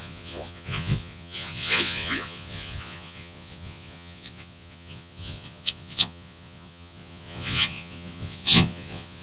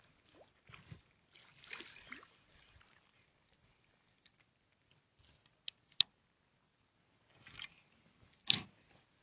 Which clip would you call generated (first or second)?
first